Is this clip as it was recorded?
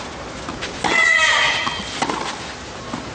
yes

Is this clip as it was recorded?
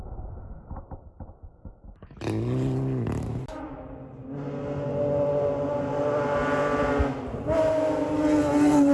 yes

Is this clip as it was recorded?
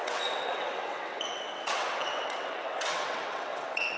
no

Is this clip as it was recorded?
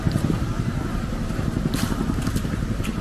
no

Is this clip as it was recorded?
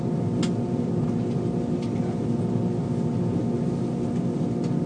yes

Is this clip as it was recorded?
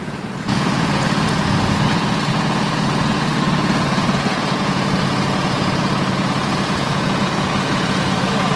no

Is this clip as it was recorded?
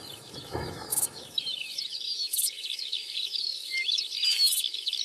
no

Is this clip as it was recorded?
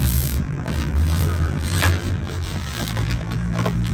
no